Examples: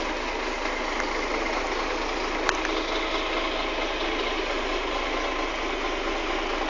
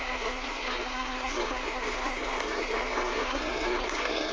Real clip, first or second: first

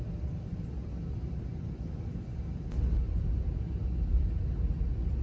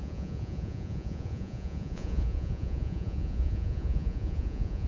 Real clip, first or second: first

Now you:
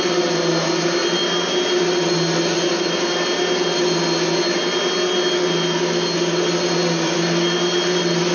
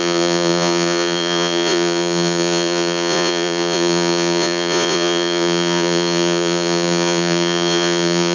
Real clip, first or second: first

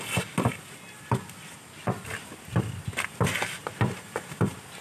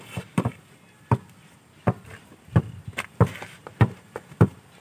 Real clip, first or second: first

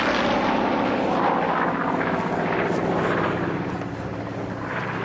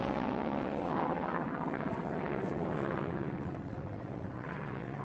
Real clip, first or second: first